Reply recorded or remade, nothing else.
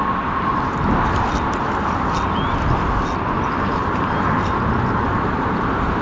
recorded